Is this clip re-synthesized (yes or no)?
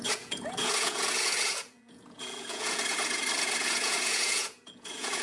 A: yes